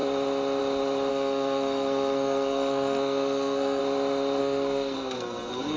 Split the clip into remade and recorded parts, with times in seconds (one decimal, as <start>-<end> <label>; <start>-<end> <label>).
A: 0.0-1.1 recorded; 1.1-3.8 remade; 3.8-4.4 recorded; 4.4-5.8 remade